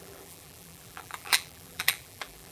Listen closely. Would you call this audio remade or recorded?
remade